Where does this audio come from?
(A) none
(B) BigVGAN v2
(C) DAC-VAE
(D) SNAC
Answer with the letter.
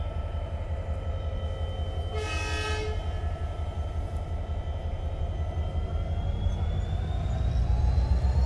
A